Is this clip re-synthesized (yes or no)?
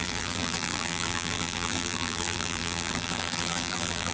yes